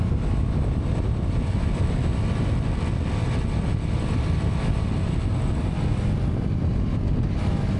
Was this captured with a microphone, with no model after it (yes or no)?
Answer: yes